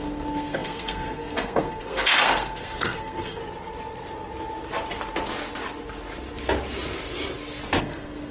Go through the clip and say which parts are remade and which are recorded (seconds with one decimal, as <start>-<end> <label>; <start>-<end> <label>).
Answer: 0.0-3.4 remade; 3.4-7.8 recorded; 7.8-8.3 remade